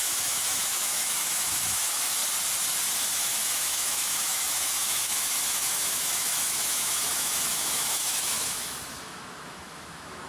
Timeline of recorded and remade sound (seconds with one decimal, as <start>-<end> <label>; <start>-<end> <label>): 0.0-2.2 remade; 2.2-3.1 recorded; 3.1-10.3 remade